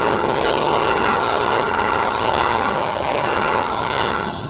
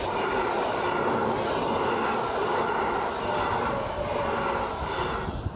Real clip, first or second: second